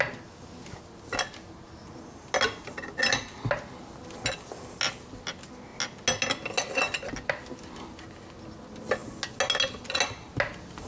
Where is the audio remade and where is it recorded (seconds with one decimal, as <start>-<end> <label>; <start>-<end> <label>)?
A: 0.0-10.9 recorded